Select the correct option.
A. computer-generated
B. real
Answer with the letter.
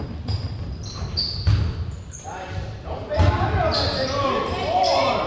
B